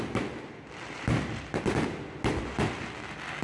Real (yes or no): yes